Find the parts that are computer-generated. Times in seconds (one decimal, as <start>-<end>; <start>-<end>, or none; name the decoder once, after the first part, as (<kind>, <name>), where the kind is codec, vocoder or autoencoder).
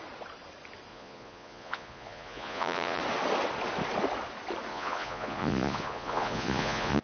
0.9-3.0 (vocoder, Vocos); 4.7-7.0